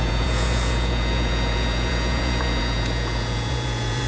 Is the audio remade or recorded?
remade